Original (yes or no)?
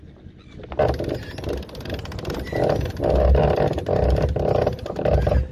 yes